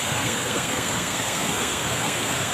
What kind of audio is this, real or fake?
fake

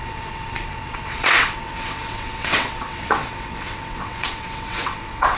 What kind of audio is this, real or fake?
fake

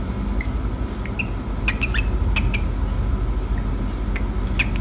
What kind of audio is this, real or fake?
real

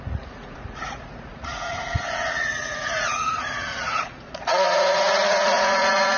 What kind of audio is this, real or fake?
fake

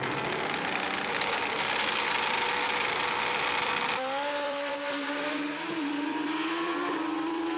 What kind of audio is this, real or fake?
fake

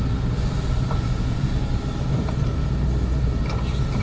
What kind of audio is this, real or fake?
real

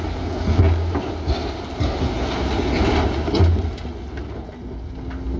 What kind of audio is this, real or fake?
real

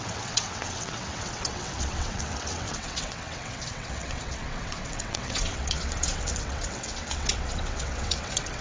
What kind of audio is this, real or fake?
fake